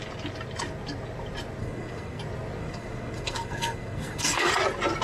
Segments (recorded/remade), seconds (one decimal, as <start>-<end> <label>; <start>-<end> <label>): 0.0-1.6 recorded; 1.6-2.2 remade; 2.2-2.6 recorded; 2.6-4.5 remade; 4.5-5.0 recorded